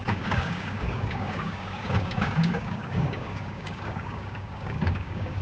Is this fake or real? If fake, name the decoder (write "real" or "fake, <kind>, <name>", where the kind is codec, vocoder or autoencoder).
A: fake, codec, DAC